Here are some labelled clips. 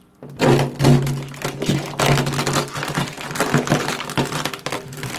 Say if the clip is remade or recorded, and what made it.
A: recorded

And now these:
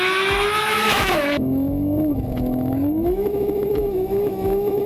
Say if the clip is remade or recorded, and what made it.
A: remade, autoencoder, DAC-VAE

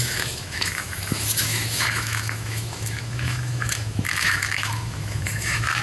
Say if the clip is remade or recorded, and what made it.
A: remade, autoencoder, DAC-VAE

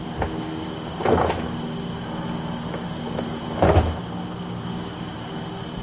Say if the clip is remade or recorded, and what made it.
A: recorded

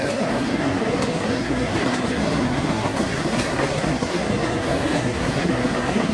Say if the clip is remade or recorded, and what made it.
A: remade, codec, SNAC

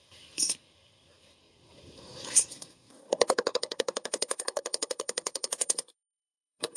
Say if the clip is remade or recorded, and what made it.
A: remade, codec, SNAC